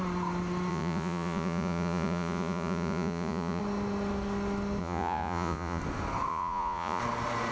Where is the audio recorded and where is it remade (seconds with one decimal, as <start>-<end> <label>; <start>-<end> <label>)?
0.0-0.7 recorded; 0.7-3.6 remade; 3.6-4.8 recorded; 4.8-5.8 remade; 5.8-6.3 recorded; 6.3-7.0 remade; 7.0-7.5 recorded

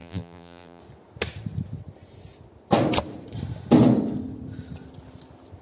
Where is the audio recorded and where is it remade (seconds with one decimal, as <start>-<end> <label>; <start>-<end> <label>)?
0.0-0.8 remade; 0.8-5.6 recorded

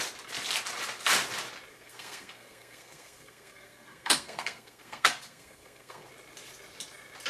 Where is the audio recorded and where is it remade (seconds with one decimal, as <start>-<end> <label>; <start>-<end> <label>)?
0.0-1.7 recorded; 1.7-6.1 remade; 6.1-7.3 recorded

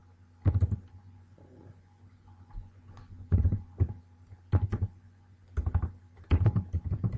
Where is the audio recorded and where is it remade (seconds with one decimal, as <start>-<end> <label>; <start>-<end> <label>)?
0.0-1.0 recorded; 1.0-3.8 remade; 3.8-4.7 recorded; 4.7-5.5 remade; 5.5-7.2 recorded